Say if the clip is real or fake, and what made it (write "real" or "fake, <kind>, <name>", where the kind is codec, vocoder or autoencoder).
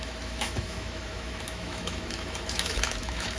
fake, autoencoder, DAC-VAE